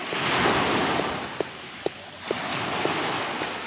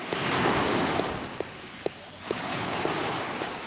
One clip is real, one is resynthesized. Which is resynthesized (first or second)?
second